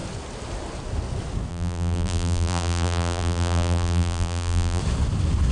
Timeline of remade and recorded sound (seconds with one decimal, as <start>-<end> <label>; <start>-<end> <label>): 0.0-1.5 recorded; 1.5-4.8 remade; 4.8-5.5 recorded